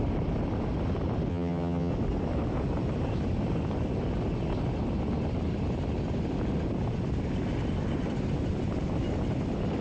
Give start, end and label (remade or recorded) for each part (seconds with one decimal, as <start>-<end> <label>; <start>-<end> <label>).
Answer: 0.0-1.3 recorded; 1.3-1.9 remade; 1.9-9.8 recorded

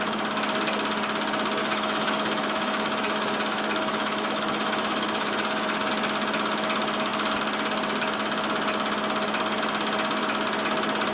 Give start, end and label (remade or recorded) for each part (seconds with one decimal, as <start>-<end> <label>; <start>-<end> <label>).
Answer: 0.0-1.6 recorded; 1.6-5.9 remade; 5.9-11.1 recorded